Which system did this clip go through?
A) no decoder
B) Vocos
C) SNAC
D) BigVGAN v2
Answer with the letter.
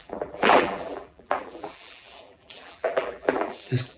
D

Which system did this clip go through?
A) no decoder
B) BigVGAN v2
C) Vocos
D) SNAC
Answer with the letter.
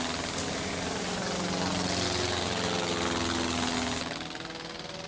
A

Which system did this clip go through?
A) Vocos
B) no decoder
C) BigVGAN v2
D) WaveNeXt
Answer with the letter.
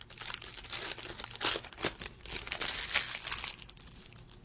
B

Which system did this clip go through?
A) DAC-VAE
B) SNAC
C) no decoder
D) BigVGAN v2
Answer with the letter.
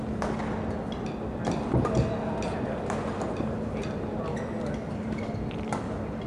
C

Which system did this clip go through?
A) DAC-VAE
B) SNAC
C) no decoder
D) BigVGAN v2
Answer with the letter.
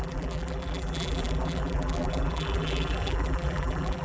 D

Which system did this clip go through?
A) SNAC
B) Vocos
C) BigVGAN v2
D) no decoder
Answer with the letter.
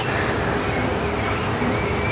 D